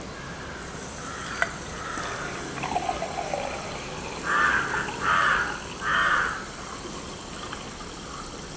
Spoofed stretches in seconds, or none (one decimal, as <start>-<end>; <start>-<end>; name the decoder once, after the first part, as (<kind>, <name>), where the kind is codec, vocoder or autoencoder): none